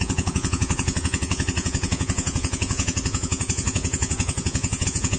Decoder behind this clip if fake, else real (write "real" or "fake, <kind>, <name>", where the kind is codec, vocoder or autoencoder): fake, vocoder, Vocos